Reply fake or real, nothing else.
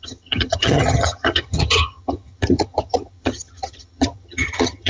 fake